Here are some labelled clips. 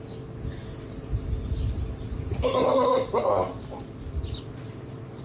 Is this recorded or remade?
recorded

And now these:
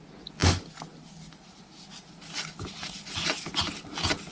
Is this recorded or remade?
recorded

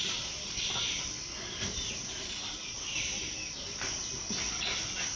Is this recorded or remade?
recorded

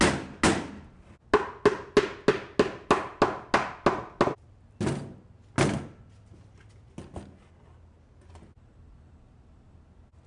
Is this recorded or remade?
recorded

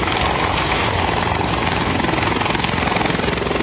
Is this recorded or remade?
recorded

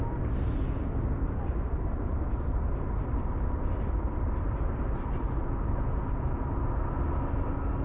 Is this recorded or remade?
recorded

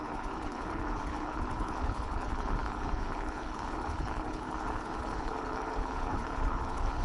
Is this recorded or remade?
remade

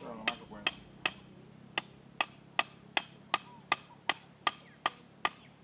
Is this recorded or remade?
recorded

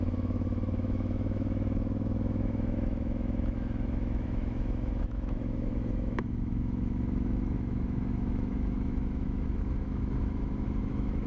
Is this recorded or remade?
remade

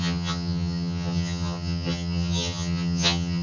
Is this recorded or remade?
remade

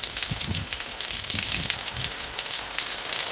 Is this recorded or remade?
remade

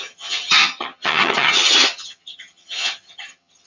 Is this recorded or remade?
remade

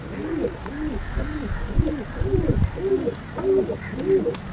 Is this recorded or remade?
recorded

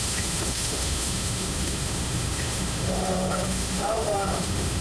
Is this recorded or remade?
remade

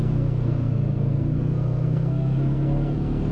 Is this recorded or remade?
remade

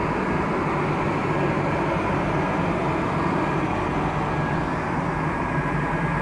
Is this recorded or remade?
recorded